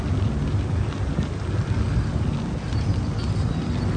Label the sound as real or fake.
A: real